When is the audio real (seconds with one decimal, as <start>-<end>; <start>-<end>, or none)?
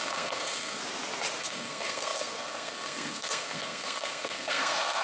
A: 0.8-1.4